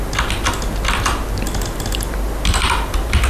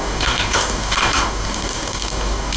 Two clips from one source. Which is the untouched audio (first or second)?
first